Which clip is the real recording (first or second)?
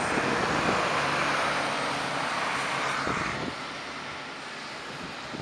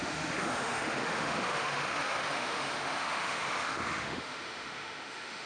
first